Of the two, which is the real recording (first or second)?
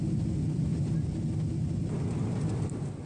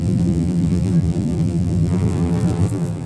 first